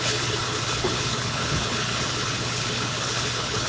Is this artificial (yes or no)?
yes